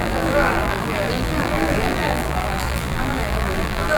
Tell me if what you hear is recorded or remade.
remade